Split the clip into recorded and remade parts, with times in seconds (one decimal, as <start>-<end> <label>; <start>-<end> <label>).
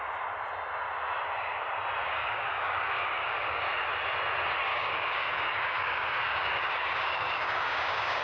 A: 0.0-2.0 recorded; 2.0-3.6 remade; 3.6-4.7 recorded; 4.7-8.2 remade